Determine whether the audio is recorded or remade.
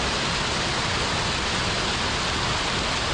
recorded